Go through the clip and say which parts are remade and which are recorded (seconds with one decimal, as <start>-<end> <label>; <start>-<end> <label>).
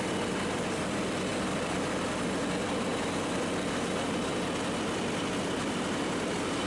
0.0-6.7 recorded